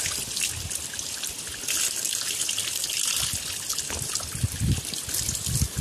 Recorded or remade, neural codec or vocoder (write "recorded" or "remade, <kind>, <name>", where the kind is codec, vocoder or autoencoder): recorded